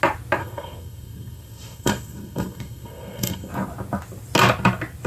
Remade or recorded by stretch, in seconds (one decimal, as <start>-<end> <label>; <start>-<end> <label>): 0.0-0.4 recorded; 0.4-3.5 remade; 3.5-5.1 recorded